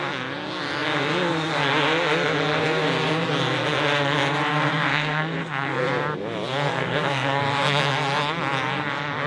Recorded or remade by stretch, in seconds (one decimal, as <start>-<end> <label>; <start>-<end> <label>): 0.0-4.5 recorded; 4.5-5.8 remade; 5.8-6.7 recorded; 6.7-7.4 remade; 7.4-9.3 recorded